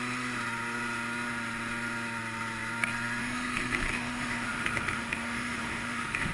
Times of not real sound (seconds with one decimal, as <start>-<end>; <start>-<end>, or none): 3.2-6.3